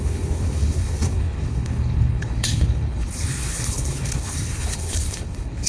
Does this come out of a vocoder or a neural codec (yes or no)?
yes